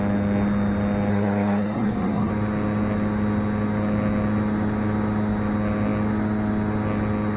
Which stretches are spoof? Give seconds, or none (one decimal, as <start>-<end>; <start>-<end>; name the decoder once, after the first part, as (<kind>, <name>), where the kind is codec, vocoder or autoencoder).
1.1-2.3 (codec, SNAC)